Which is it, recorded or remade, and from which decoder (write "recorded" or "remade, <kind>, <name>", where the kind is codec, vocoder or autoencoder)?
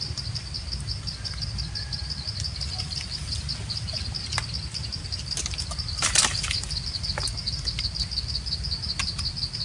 recorded